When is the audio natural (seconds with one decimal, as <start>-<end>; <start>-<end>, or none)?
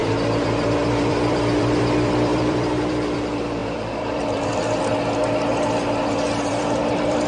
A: none